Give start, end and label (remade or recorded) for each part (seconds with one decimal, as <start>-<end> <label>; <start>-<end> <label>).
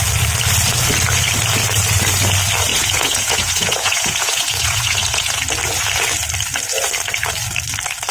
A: 0.0-2.7 recorded; 2.7-5.4 remade; 5.4-8.1 recorded